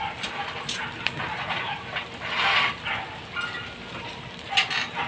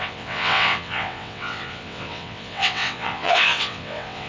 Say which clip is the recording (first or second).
first